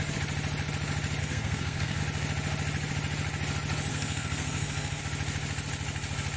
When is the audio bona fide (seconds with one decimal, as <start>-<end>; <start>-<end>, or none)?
0.0-1.2; 2.0-3.9; 5.0-6.4